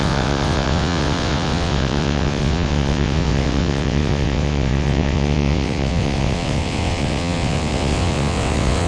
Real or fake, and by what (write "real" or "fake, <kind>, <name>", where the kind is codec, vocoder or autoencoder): fake, vocoder, WaveNeXt